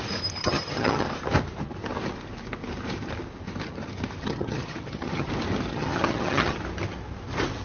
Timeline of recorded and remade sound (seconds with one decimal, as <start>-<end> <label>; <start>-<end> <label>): 0.0-0.4 recorded; 0.4-1.1 remade; 1.1-4.2 recorded; 4.2-5.3 remade; 5.3-5.7 recorded; 5.7-6.6 remade; 6.6-7.6 recorded